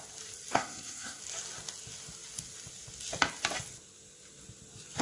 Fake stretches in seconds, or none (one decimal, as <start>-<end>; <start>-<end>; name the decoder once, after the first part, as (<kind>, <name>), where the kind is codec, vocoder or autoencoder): 0.5-1.2 (codec, SNAC)